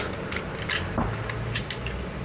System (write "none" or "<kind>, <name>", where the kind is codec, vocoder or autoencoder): none